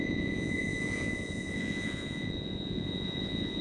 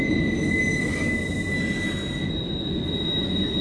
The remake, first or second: first